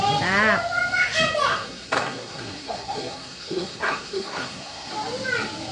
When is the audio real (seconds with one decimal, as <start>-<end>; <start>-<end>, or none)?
0.0-1.5; 4.9-5.7